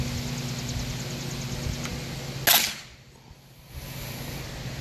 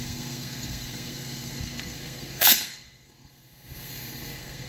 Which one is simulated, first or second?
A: second